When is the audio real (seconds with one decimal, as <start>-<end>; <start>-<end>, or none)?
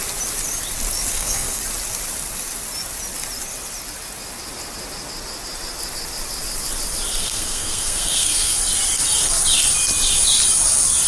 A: 0.0-1.1; 1.6-7.2; 8.6-11.1